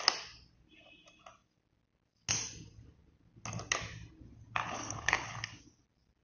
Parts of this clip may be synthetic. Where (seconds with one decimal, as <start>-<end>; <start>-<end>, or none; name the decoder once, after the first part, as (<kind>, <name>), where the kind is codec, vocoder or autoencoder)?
4.6-5.6 (codec, HILCodec)